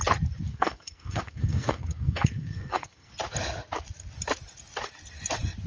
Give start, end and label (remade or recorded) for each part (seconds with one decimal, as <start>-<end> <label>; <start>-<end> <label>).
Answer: 0.0-0.5 recorded; 0.5-3.1 remade; 3.1-5.7 recorded